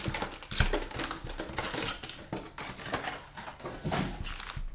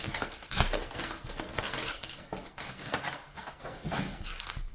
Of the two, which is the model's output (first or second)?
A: second